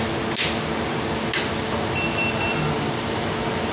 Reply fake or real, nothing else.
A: real